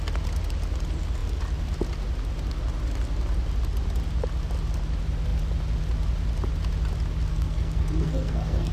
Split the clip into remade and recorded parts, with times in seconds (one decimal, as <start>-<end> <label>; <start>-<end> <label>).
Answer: 0.0-7.3 recorded; 7.3-8.7 remade